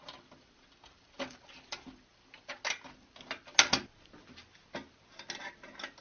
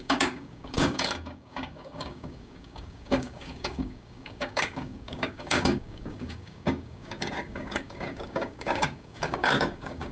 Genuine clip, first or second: first